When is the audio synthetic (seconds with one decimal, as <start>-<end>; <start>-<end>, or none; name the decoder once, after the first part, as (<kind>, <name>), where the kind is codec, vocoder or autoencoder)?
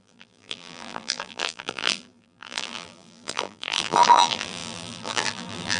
0.0-5.8 (vocoder, BigVGAN v2)